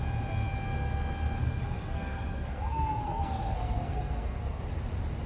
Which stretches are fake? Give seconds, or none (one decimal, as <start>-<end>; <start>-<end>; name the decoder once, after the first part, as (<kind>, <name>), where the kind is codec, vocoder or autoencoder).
1.4-4.6 (codec, SNAC)